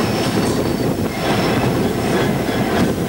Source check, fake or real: real